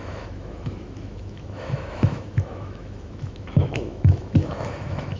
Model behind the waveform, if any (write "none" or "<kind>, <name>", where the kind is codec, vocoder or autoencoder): autoencoder, DAC-VAE